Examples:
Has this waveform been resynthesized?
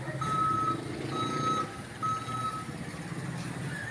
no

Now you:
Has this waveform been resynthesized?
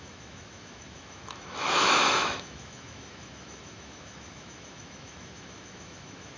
yes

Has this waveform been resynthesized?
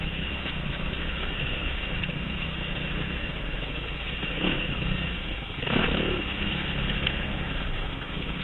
yes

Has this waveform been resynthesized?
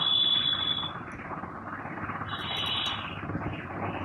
no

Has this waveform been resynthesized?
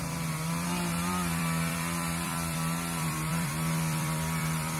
yes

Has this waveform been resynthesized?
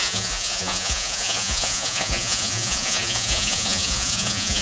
yes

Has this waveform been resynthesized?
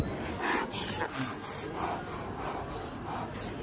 no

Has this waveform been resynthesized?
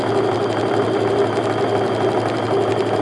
no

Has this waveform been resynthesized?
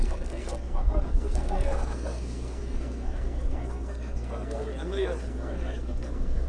yes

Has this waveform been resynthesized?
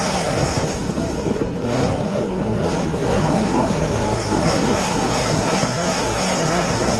yes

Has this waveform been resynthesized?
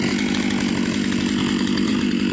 no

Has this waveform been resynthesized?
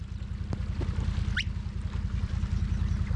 no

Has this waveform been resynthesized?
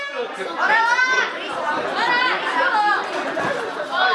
no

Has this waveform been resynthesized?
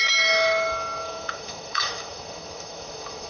yes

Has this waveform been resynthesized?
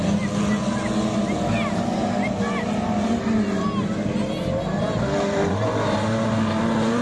no